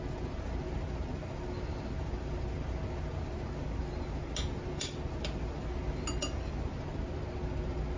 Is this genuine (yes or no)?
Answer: yes